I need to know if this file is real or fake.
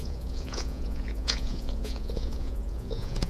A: fake